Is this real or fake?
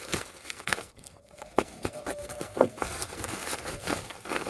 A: fake